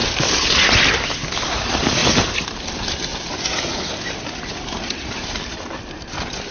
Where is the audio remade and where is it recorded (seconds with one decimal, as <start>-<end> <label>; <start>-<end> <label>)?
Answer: 0.0-6.5 recorded